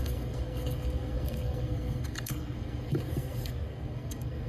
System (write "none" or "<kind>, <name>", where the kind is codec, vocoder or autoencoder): codec, SNAC